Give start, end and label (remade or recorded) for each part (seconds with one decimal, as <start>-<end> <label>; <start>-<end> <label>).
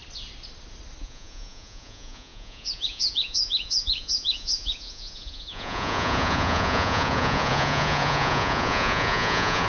0.0-1.0 recorded; 1.0-9.7 remade